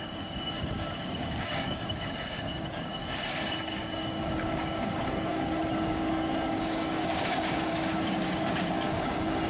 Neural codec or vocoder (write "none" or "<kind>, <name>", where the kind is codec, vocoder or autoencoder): codec, DAC